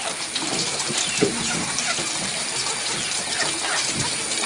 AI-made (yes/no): yes